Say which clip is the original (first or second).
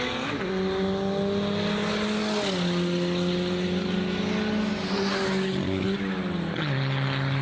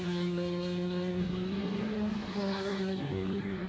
first